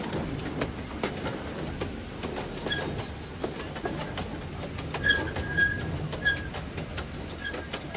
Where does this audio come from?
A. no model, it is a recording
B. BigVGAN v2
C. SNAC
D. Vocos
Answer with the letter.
A